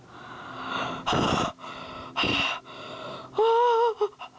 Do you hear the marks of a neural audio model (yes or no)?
no